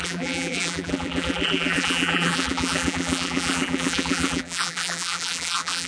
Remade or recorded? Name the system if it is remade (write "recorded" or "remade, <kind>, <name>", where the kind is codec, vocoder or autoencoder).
remade, vocoder, BigVGAN v2